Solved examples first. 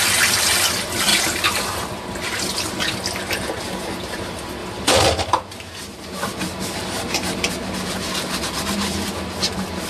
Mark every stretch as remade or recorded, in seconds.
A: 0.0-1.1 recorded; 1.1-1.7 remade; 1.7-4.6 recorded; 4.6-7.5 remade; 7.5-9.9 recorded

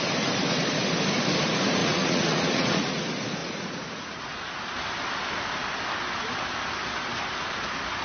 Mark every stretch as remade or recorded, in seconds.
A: 0.0-1.8 recorded; 1.8-3.0 remade; 3.0-3.4 recorded; 3.4-4.3 remade; 4.3-8.0 recorded

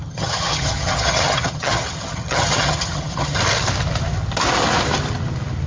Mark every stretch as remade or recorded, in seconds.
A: 0.0-3.4 remade; 3.4-5.7 recorded

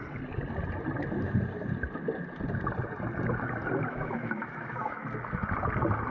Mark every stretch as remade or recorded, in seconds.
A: 0.0-3.9 recorded; 3.9-5.0 remade; 5.0-6.1 recorded